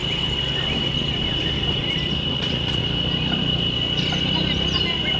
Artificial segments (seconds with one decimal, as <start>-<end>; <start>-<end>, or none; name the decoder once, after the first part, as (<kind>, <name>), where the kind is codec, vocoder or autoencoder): 2.3-2.8 (vocoder, Vocos)